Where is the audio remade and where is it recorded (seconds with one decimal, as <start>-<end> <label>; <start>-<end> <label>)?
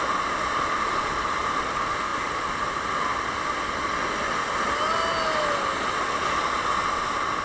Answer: 0.0-7.4 recorded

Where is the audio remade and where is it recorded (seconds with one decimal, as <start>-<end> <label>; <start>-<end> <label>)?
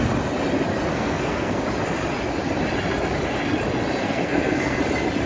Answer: 0.0-0.9 recorded; 0.9-1.6 remade; 1.6-4.0 recorded; 4.0-4.8 remade; 4.8-5.3 recorded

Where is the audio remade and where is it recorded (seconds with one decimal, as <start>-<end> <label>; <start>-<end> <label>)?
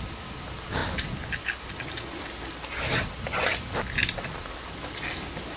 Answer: 0.0-5.6 recorded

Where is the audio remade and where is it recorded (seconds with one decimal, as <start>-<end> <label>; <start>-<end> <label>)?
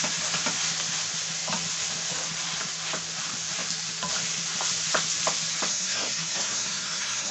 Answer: 0.0-5.7 recorded; 5.7-7.3 remade